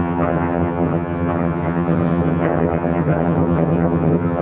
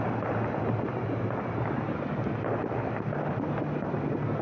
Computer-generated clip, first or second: first